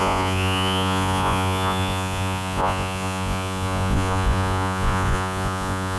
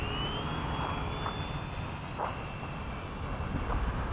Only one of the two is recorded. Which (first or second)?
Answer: second